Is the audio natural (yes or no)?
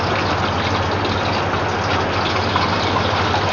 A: yes